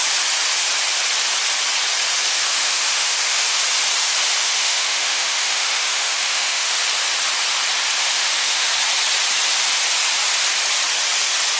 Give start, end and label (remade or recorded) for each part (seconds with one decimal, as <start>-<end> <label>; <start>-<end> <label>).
0.0-2.4 recorded; 2.4-3.6 remade; 3.6-4.4 recorded; 4.4-6.8 remade; 6.8-8.0 recorded; 8.0-8.7 remade; 8.7-11.6 recorded

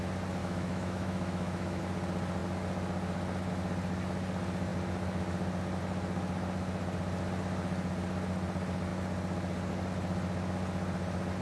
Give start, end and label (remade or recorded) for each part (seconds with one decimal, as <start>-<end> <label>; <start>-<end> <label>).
0.0-0.4 recorded; 0.4-1.8 remade; 1.8-11.4 recorded